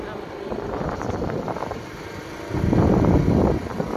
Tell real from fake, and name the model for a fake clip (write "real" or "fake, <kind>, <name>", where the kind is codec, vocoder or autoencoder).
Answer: real